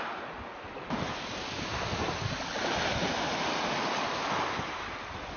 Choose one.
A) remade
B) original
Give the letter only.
B